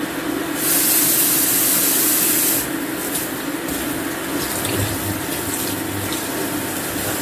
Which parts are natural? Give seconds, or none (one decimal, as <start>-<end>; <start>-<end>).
0.0-2.1; 5.8-7.2